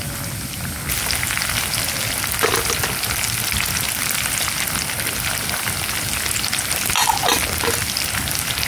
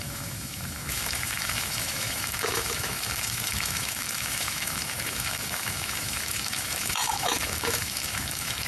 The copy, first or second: second